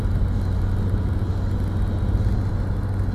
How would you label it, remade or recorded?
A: recorded